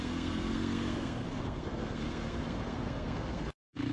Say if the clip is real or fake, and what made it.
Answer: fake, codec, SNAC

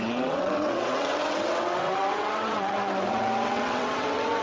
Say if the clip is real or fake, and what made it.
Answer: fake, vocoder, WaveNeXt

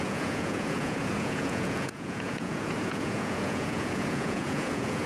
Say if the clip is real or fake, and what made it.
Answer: fake, vocoder, Vocos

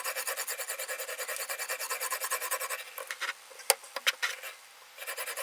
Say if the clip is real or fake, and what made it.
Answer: real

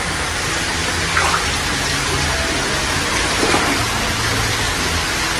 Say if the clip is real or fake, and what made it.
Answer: real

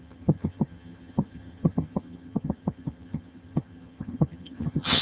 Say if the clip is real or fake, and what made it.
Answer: fake, vocoder, HiFi-GAN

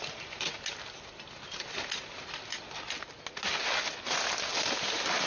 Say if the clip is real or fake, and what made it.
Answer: real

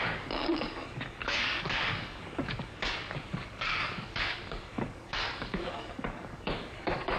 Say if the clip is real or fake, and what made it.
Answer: fake, codec, DAC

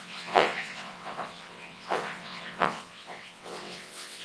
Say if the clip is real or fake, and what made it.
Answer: fake, vocoder, WaveNeXt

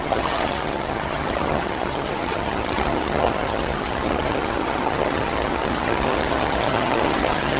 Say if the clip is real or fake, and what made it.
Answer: fake, vocoder, HiFi-GAN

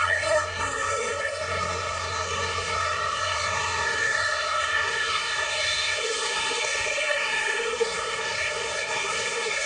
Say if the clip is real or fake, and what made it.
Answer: fake, codec, SNAC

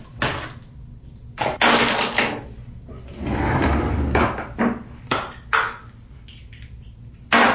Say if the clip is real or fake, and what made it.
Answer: real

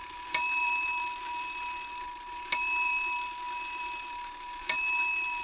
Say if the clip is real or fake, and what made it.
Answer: fake, vocoder, BigVGAN v2